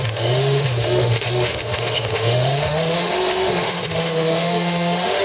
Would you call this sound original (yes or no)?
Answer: no